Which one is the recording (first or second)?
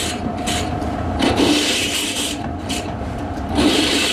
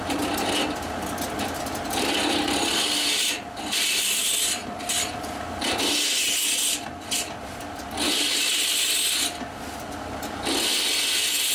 second